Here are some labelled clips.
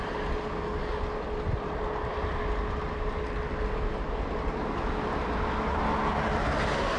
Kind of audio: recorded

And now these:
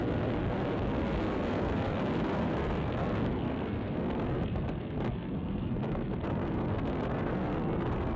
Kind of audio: remade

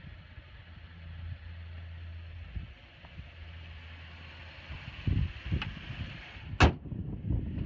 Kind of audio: recorded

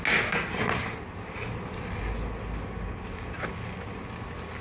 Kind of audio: recorded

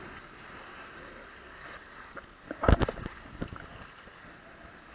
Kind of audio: recorded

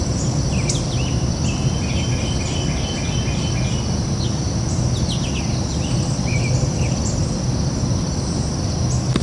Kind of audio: recorded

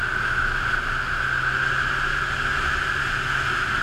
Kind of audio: recorded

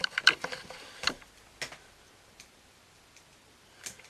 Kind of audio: recorded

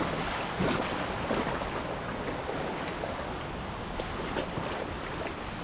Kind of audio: recorded